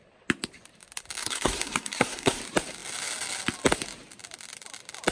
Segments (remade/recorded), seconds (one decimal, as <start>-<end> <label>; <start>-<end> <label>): 0.0-1.2 recorded; 1.2-2.4 remade; 2.4-5.1 recorded